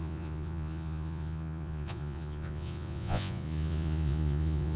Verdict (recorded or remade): remade